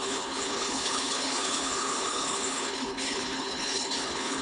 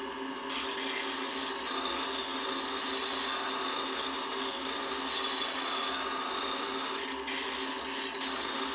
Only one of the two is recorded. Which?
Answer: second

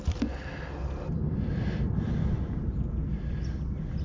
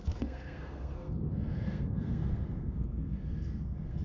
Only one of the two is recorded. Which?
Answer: first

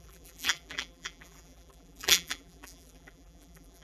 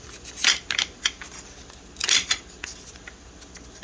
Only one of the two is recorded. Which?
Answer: second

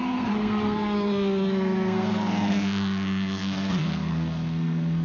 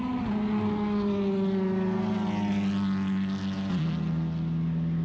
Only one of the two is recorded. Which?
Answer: second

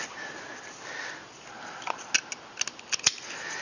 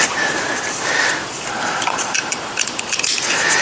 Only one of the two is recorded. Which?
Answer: first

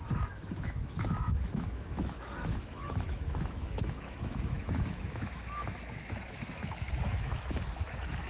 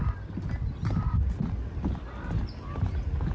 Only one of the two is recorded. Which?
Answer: second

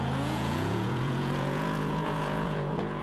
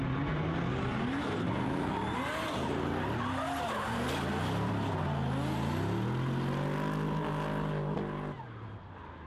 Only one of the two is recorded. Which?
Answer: second